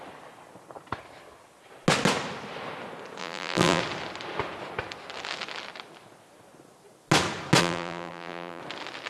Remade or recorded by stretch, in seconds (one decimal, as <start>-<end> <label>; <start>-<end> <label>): 0.0-3.2 recorded; 3.2-3.8 remade; 3.8-7.6 recorded; 7.6-8.6 remade; 8.6-9.1 recorded